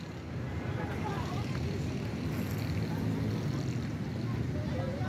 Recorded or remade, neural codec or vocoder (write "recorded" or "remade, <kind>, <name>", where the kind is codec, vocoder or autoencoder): recorded